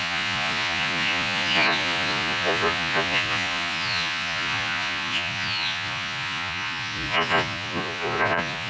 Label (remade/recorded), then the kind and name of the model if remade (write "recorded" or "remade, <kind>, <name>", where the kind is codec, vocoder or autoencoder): remade, vocoder, Vocos